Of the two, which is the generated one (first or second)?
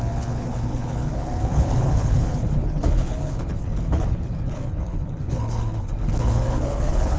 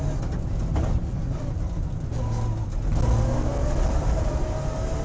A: first